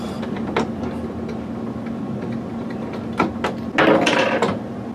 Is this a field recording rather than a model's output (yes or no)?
yes